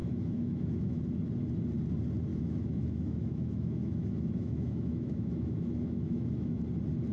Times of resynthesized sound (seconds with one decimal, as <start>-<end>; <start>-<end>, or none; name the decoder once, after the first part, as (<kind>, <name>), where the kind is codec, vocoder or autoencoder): 0.0-1.0 (autoencoder, DAC-VAE); 2.3-6.6